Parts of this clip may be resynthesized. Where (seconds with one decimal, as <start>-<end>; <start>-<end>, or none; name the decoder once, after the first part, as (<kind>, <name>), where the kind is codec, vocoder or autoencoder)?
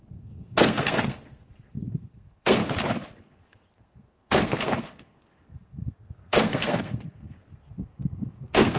0.0-2.6 (codec, SNAC); 3.3-8.8